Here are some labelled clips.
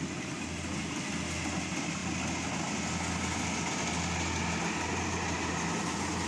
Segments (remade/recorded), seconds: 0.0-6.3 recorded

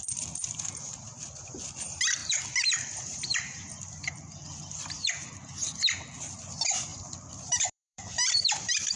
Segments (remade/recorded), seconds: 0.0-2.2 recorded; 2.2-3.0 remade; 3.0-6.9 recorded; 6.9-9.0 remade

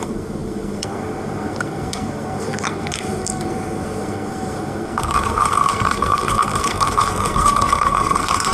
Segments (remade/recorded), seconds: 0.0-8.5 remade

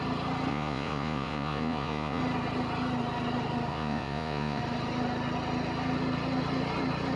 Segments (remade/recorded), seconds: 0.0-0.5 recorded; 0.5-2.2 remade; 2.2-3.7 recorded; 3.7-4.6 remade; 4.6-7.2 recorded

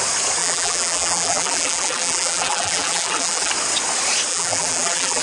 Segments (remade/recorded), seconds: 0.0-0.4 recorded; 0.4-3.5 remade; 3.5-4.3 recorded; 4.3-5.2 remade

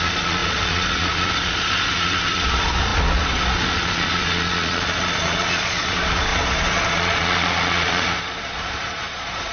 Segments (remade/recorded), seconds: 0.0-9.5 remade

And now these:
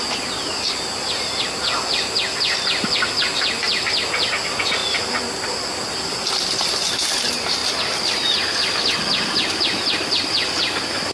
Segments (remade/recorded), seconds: 0.0-11.1 recorded

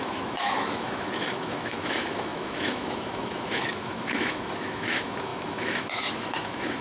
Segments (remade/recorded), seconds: 0.0-6.8 remade